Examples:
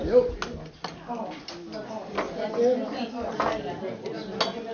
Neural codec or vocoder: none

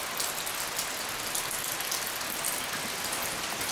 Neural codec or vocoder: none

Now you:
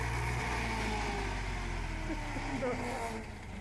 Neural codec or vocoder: none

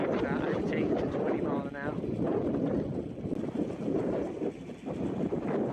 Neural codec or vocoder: none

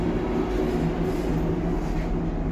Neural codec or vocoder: none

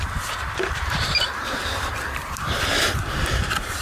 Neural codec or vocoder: vocoder, BigVGAN v2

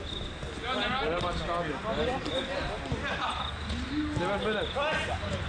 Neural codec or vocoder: none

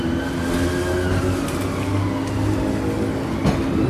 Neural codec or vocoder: none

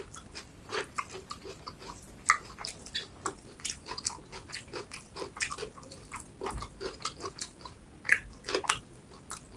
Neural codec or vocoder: vocoder, BigVGAN v2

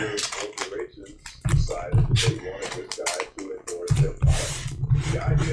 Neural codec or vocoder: none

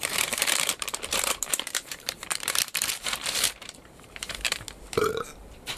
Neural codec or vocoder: vocoder, BigVGAN v2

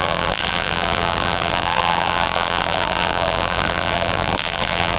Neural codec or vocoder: vocoder, BigVGAN v2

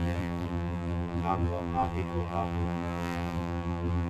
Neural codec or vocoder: vocoder, BigVGAN v2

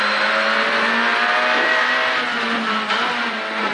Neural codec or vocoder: none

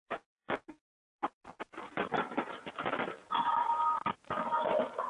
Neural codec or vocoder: vocoder, BigVGAN v2